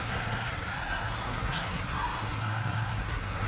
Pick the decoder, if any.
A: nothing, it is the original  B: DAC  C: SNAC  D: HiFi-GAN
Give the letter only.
C